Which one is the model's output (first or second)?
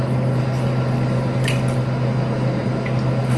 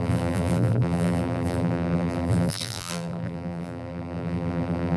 second